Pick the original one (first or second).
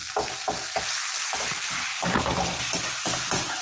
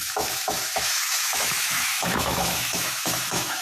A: first